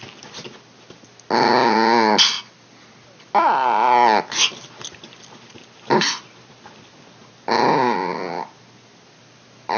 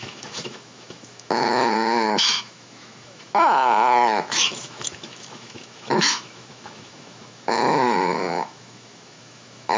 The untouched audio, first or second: first